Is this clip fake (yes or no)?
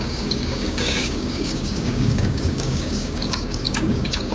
yes